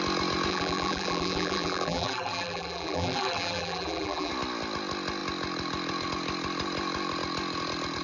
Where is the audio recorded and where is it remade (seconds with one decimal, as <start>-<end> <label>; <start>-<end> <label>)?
0.0-0.5 recorded; 0.5-4.3 remade; 4.3-8.0 recorded